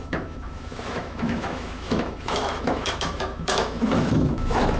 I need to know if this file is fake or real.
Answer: fake